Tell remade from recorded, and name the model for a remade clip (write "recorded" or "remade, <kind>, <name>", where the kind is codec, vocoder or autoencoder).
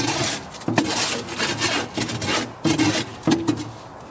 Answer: recorded